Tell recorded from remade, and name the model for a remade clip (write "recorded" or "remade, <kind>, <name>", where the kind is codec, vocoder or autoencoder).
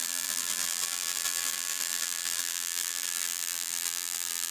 remade, vocoder, BigVGAN v2